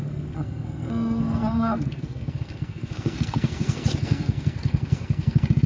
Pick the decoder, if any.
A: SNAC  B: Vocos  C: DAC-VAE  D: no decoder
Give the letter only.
A